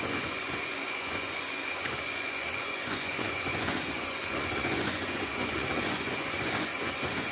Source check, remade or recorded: remade